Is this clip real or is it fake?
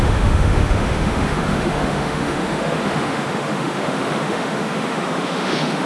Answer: fake